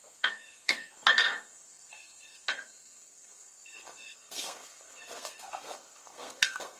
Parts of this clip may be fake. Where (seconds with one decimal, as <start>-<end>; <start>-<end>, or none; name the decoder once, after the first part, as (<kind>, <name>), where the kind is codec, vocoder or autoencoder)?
0.0-6.8 (codec, SNAC)